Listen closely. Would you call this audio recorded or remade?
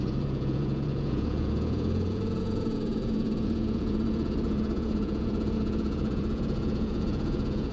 remade